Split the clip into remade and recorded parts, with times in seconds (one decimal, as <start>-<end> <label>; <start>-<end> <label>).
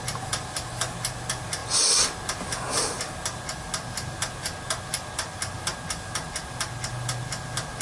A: 0.0-7.8 recorded